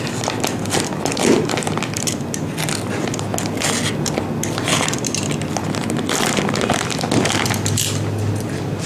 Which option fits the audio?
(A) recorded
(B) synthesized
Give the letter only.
A